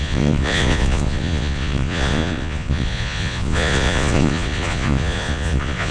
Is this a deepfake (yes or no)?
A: yes